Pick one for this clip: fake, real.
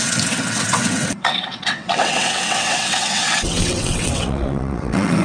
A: fake